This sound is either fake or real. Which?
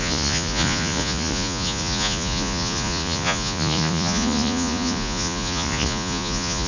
fake